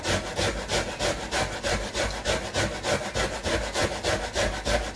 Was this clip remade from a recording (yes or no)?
no